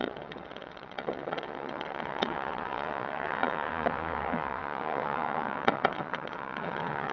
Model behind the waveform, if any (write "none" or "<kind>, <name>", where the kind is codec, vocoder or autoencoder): vocoder, WaveNeXt